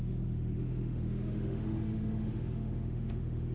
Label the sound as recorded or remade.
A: remade